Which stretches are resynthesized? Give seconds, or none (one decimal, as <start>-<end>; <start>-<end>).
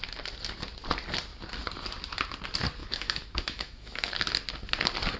2.8-4.1